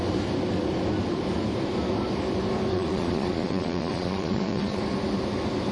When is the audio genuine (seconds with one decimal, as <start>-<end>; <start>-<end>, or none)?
0.0-2.7; 4.8-5.7